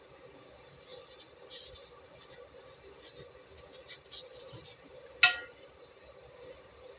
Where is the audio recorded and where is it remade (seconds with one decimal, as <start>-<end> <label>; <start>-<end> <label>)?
0.0-7.0 recorded

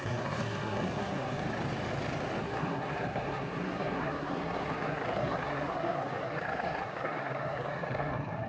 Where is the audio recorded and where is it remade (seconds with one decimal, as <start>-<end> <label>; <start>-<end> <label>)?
0.0-1.4 remade; 1.4-2.4 recorded; 2.4-8.5 remade

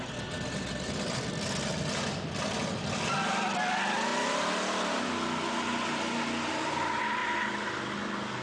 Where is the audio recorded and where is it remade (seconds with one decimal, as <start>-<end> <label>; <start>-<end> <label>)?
0.0-8.4 recorded

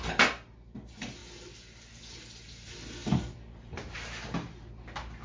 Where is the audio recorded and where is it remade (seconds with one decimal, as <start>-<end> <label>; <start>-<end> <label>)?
0.0-5.2 recorded

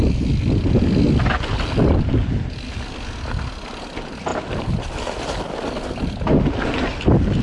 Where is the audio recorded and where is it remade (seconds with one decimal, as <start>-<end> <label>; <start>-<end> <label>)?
0.0-7.4 recorded

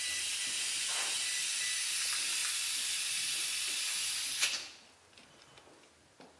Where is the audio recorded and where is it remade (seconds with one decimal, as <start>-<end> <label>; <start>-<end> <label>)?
0.0-6.4 recorded

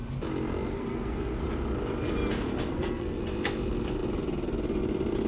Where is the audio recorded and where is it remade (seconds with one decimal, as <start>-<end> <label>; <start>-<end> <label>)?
0.0-0.7 recorded; 0.7-1.4 remade; 1.4-2.7 recorded; 2.7-3.2 remade; 3.2-5.3 recorded

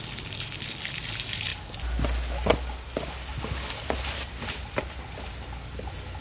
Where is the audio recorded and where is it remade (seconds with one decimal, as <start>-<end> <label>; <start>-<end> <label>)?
0.0-6.2 recorded